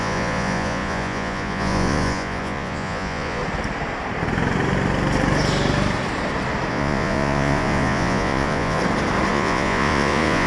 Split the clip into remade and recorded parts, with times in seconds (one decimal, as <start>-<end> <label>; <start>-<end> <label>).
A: 0.0-3.4 remade; 3.4-6.7 recorded; 6.7-8.8 remade; 8.8-9.3 recorded; 9.3-10.5 remade